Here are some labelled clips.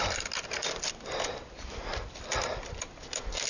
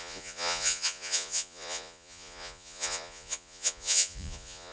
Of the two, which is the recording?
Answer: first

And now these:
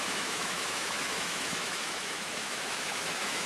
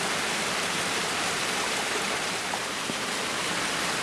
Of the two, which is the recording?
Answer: second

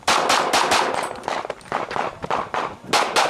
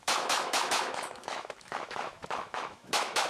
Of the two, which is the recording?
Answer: first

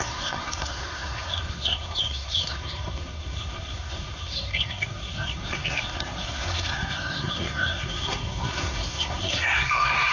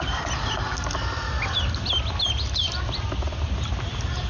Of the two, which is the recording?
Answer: second